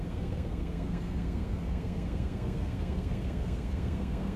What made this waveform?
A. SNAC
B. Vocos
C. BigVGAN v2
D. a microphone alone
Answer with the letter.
A